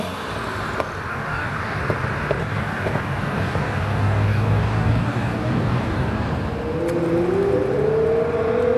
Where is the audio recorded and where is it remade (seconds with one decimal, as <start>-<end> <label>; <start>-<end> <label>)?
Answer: 0.0-1.1 recorded; 1.1-1.8 remade; 1.8-2.4 recorded; 2.4-6.3 remade; 6.3-8.8 recorded